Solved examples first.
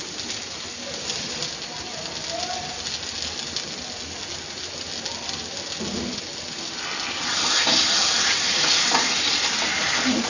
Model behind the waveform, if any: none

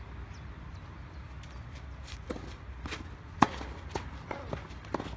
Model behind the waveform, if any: none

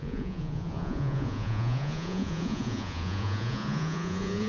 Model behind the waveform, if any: vocoder, Vocos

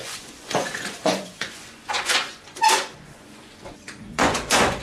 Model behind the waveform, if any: vocoder, Vocos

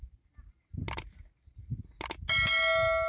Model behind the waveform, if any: none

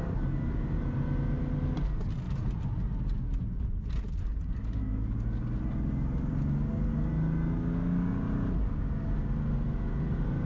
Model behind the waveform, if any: none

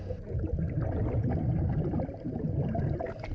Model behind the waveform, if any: none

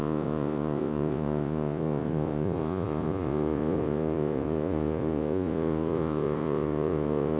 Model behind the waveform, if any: vocoder, Vocos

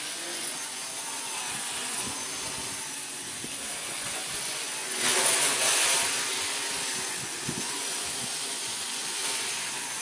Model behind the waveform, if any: vocoder, Vocos